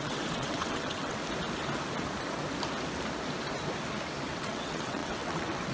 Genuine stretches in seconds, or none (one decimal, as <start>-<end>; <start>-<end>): 1.2-4.3